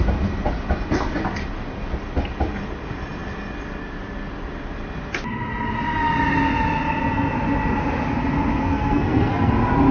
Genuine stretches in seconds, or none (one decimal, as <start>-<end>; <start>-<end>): 0.0-8.6; 9.5-9.9

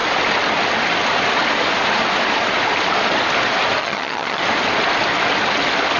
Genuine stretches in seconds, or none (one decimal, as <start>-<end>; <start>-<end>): 0.0-3.8; 4.4-6.0